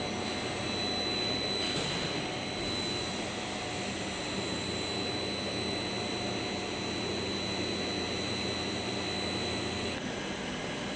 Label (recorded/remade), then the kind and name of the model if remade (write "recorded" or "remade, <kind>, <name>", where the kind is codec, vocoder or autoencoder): recorded